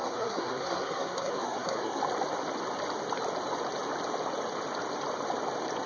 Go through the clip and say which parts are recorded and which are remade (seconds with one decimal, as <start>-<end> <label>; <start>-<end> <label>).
0.0-2.0 remade; 2.0-5.9 recorded